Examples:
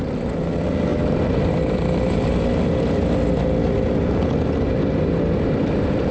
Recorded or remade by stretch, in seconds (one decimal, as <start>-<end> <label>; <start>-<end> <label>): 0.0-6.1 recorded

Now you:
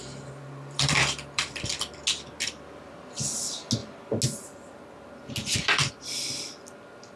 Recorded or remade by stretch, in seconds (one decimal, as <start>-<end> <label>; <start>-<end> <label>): 0.0-1.7 remade; 1.7-7.2 recorded

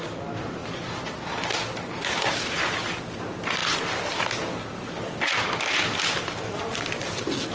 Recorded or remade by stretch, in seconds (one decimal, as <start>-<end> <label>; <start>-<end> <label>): 0.0-7.5 recorded